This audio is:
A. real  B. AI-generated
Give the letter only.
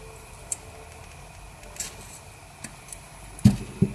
A